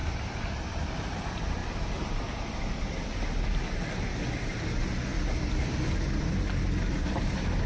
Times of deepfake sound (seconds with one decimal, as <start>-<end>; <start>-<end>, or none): 0.0-1.6; 4.6-7.7